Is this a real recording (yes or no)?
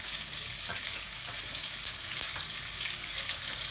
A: no